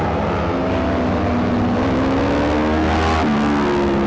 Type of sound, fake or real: real